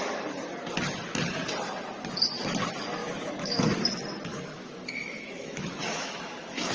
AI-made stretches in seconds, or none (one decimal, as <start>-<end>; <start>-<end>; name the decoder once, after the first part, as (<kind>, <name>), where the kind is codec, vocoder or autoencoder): 3.0-3.8 (autoencoder, DAC-VAE); 4.3-6.7